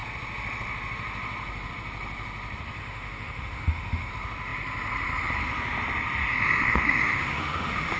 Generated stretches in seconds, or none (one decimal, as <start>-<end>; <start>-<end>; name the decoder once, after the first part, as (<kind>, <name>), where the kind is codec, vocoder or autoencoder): 2.8-4.1 (autoencoder, DAC-VAE); 6.2-8.0